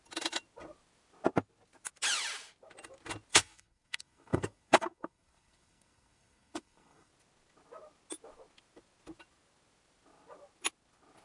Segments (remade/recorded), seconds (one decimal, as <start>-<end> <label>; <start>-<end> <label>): 0.0-3.3 recorded; 3.3-7.1 remade; 7.1-11.2 recorded